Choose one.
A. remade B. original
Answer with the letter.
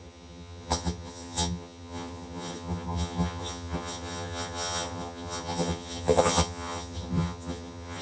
A